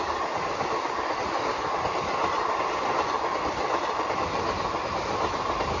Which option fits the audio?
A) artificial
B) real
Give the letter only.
B